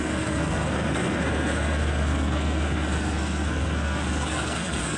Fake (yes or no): yes